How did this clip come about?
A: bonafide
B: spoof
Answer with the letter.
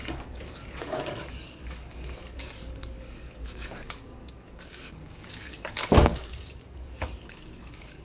B